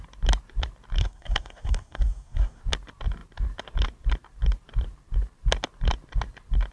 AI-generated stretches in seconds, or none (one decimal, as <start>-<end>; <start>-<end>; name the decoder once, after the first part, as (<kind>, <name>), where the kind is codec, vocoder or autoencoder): 1.0-2.6 (codec, SNAC)

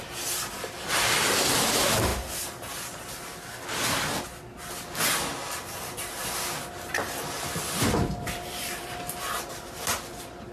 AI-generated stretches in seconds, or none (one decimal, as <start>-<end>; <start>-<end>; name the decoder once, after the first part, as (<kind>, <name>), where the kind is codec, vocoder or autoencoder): 0.0-2.1 (vocoder, BigVGAN v2); 6.9-10.5

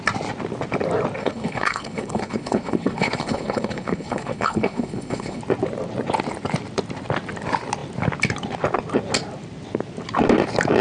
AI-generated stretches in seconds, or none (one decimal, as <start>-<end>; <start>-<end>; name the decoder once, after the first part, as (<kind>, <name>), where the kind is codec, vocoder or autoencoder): 1.2-5.4 (codec, HILCodec)

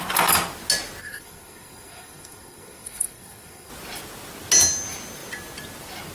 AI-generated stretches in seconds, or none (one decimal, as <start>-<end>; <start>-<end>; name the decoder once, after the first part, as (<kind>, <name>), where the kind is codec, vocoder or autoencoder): 1.0-3.7 (codec, SNAC)

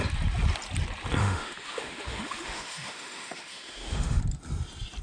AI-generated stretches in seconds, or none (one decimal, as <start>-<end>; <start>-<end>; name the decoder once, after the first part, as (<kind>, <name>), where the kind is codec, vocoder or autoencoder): 1.2-4.2 (autoencoder, DAC-VAE)

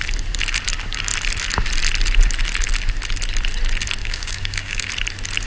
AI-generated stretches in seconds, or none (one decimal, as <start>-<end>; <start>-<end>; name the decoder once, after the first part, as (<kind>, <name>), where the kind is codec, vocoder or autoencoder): 4.0-4.9 (codec, DAC)

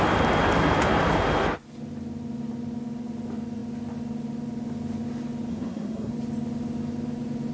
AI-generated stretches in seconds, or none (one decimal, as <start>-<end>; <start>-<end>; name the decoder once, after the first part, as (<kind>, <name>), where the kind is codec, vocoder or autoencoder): 5.5-6.1 (codec, SNAC)